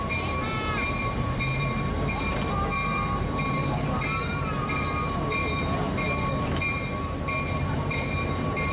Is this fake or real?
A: fake